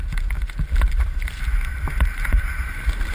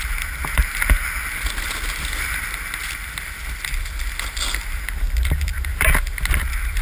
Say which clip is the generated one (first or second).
first